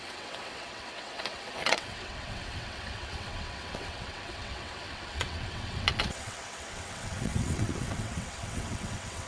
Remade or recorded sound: remade